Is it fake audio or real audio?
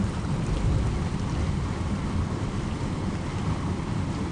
real